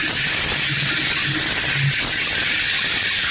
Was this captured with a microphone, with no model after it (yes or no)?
yes